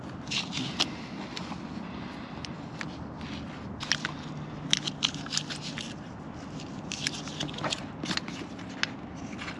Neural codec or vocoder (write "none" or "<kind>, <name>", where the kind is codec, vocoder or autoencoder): none